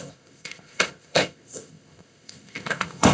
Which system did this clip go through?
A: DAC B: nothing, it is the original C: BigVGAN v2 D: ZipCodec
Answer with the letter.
D